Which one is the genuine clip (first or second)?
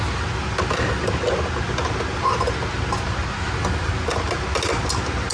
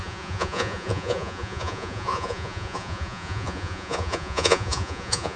first